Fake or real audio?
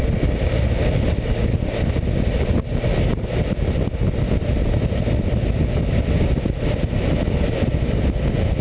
real